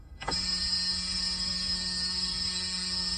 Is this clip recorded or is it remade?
remade